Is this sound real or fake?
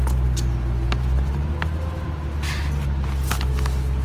real